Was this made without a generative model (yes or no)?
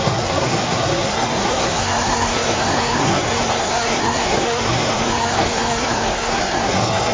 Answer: no